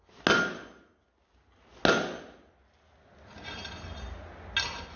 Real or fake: real